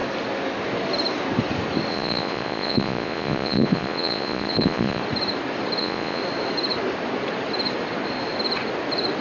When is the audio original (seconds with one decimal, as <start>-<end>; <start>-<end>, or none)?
0.0-1.9; 5.0-5.8; 6.2-9.2

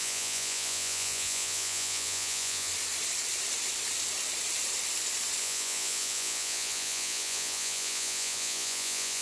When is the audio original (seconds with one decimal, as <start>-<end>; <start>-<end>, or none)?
2.7-5.4

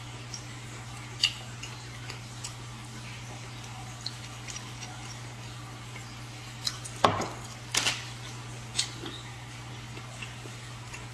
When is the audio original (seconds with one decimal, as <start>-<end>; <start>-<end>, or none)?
0.0-11.1

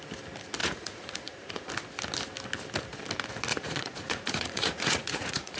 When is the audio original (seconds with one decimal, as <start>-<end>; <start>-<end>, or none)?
0.0-0.6; 1.7-3.5

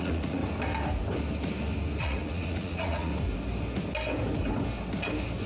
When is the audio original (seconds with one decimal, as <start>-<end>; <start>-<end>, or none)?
0.4-2.0; 3.1-5.5